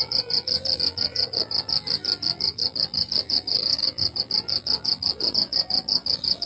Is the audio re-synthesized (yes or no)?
yes